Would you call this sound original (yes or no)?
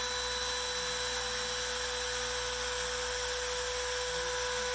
yes